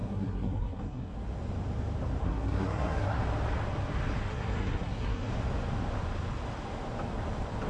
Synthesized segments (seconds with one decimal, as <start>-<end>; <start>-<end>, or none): 0.0-1.1; 2.2-3.2; 4.3-5.3

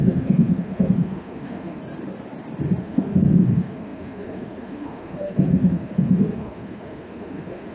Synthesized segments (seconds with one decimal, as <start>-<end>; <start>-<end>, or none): 0.0-1.8; 2.8-7.7